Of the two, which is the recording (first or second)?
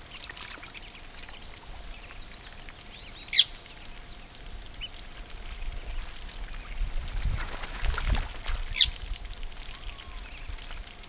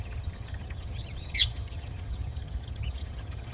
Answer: first